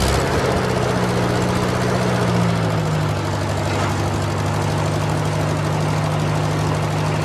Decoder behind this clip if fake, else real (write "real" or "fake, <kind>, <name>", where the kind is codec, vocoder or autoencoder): real